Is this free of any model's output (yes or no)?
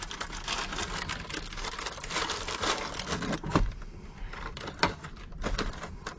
yes